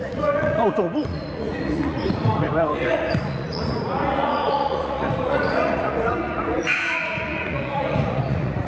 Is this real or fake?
fake